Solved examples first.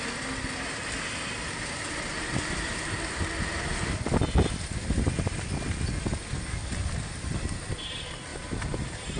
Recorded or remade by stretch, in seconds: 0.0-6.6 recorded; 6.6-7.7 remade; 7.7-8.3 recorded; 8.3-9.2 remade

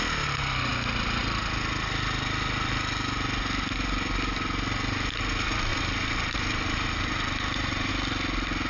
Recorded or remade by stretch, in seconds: 0.0-5.7 recorded; 5.7-7.9 remade; 7.9-8.7 recorded

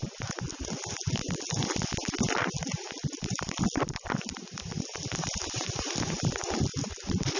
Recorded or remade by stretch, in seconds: 0.0-2.0 recorded; 2.0-5.9 remade; 5.9-7.4 recorded

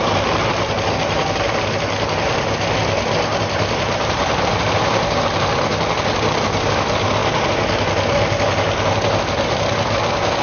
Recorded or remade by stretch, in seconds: 0.0-3.3 recorded; 3.3-5.3 remade; 5.3-10.4 recorded

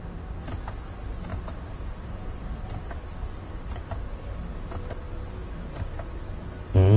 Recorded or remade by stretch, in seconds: 0.0-1.3 recorded; 1.3-4.9 remade; 4.9-7.0 recorded